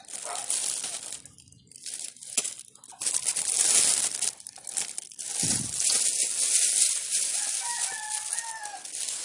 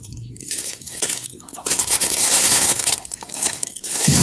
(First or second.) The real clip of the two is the first